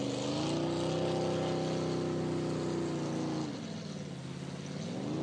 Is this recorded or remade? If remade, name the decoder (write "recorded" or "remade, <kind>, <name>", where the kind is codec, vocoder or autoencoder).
recorded